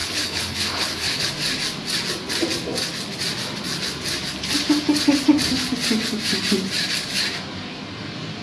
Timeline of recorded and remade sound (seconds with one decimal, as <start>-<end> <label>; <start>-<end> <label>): 0.0-1.3 remade; 1.3-8.4 recorded